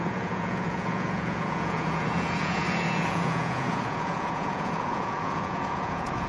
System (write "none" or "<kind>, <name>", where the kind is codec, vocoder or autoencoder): vocoder, Vocos